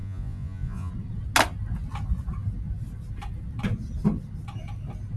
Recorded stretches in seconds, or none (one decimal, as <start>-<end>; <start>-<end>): 0.9-5.2